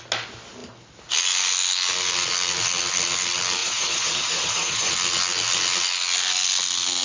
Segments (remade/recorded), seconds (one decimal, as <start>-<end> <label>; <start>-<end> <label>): 0.0-3.6 recorded; 3.6-4.9 remade; 4.9-7.0 recorded

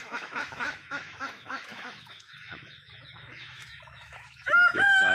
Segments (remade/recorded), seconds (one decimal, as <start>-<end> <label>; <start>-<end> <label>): 0.0-5.1 remade